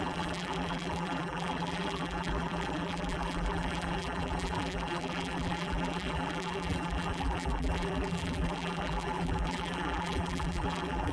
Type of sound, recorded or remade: remade